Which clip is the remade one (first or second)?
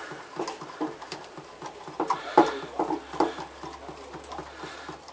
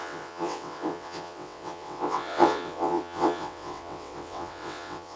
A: second